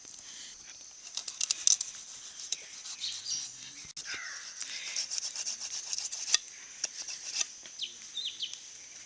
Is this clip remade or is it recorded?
recorded